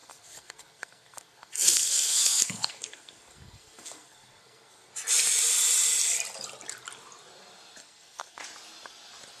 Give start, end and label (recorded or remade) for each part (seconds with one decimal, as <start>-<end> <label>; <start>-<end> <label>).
0.0-4.9 remade; 4.9-7.8 recorded; 7.8-8.4 remade; 8.4-9.4 recorded

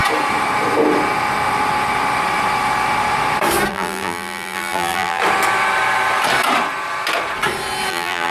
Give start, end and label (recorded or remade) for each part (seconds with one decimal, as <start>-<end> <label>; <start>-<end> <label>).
0.0-3.7 recorded; 3.7-5.2 remade; 5.2-7.9 recorded; 7.9-8.3 remade

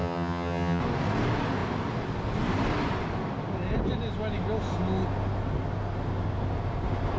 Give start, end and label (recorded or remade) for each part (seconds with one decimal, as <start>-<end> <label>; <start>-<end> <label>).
0.0-0.8 remade; 0.8-7.2 recorded